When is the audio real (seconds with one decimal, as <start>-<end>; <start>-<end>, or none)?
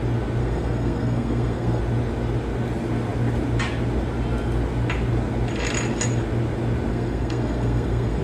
0.0-0.4; 1.8-6.9